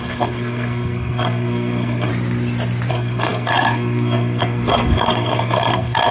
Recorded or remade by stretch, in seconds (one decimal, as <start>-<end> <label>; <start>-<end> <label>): 0.0-2.1 remade; 2.1-2.9 recorded; 2.9-6.1 remade